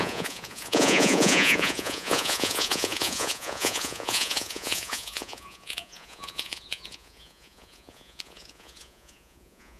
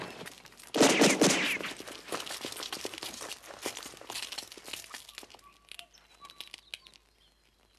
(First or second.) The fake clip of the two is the first